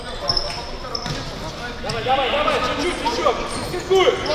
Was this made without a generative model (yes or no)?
yes